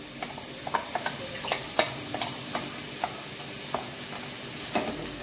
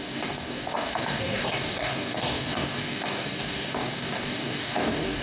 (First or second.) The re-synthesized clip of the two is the second